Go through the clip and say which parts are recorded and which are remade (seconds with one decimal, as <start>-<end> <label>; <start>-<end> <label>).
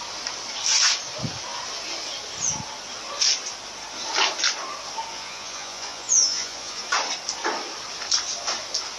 0.0-5.1 recorded; 5.1-6.8 remade; 6.8-9.0 recorded